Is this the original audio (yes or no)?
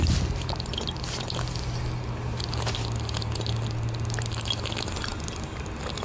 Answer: yes